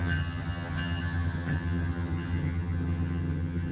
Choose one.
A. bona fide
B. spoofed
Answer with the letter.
B